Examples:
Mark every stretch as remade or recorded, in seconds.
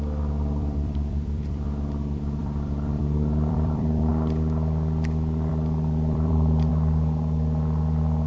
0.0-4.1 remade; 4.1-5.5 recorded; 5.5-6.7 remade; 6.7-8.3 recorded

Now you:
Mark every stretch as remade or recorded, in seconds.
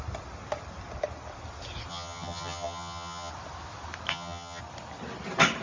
0.0-1.9 recorded; 1.9-3.3 remade; 3.3-4.1 recorded; 4.1-4.6 remade; 4.6-5.6 recorded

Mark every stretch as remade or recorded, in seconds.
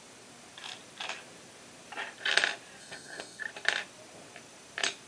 0.0-2.8 recorded; 2.8-3.4 remade; 3.4-5.1 recorded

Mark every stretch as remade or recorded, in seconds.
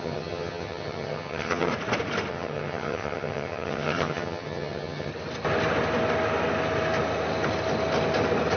0.0-1.7 remade; 1.7-2.3 recorded; 2.3-5.1 remade; 5.1-8.6 recorded